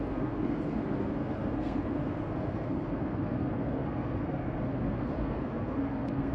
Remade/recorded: remade